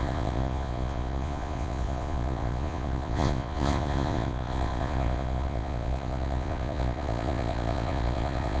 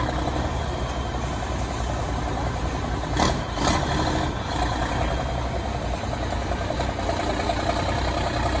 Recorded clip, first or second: second